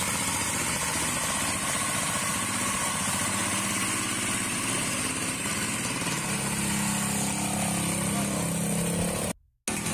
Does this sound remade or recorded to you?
recorded